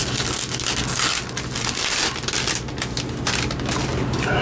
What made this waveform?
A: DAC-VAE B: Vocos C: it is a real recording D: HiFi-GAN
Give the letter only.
C